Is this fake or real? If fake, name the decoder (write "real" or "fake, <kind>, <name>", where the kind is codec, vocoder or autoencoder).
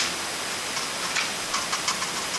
real